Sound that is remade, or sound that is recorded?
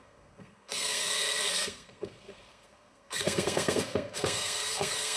remade